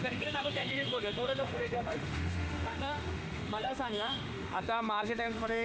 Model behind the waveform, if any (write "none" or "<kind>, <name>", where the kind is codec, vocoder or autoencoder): autoencoder, DAC-VAE